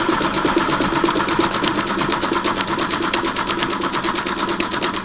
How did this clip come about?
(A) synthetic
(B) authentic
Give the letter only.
B